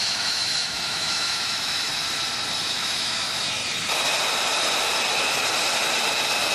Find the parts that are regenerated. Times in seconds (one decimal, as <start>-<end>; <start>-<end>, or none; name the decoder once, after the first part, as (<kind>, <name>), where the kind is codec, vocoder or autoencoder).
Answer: 0.0-1.9 (autoencoder, DAC-VAE); 2.6-3.6